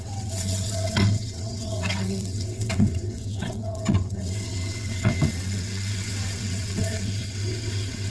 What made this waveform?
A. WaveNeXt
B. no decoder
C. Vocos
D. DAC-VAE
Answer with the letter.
A